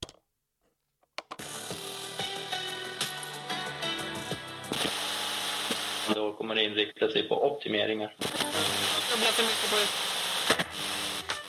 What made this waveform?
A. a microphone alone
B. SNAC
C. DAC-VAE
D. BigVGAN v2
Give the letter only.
A